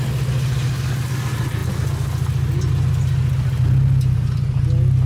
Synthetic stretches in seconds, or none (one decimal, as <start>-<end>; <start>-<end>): none